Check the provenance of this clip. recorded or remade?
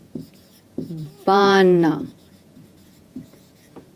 remade